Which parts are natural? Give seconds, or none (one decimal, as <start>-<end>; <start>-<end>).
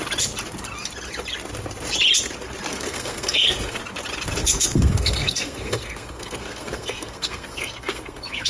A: 0.0-2.7; 3.8-4.4